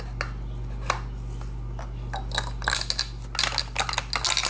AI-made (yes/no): no